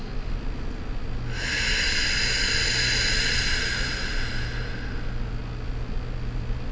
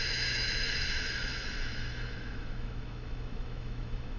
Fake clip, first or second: second